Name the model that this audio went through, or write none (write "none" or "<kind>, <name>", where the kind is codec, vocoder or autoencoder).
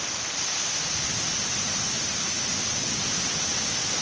none